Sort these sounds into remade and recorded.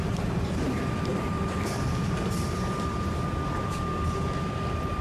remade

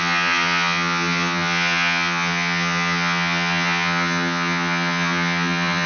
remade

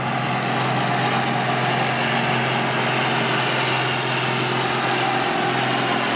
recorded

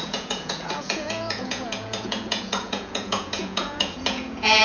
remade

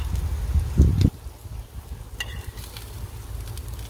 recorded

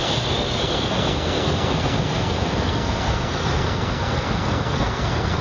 remade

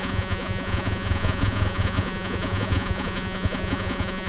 remade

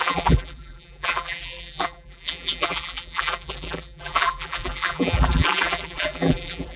remade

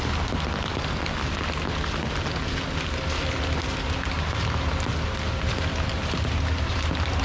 recorded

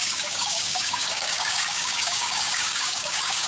remade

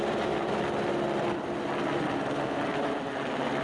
recorded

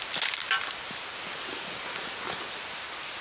recorded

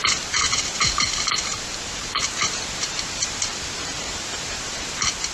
remade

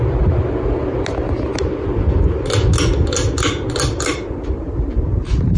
recorded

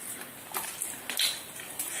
recorded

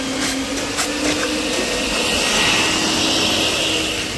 recorded